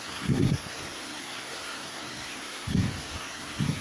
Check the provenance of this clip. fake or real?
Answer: fake